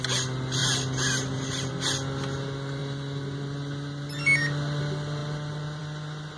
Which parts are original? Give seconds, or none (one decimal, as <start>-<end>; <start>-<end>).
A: 0.0-0.6; 1.7-2.8; 4.8-6.4